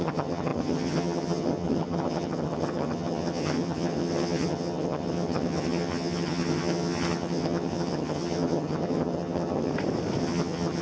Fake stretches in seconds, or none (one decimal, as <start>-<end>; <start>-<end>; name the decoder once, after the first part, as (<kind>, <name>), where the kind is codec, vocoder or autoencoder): 0.0-9.7 (vocoder, HiFi-GAN); 10.2-10.8